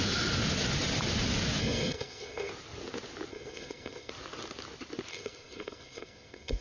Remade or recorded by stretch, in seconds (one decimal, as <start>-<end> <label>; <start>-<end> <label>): 0.0-1.6 recorded; 1.6-2.5 remade; 2.5-3.3 recorded; 3.3-4.1 remade; 4.1-5.1 recorded; 5.1-6.6 remade